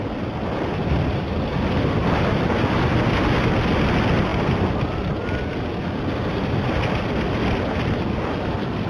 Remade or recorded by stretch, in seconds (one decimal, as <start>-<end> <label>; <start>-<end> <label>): 0.0-0.8 recorded; 0.8-2.1 remade; 2.1-8.9 recorded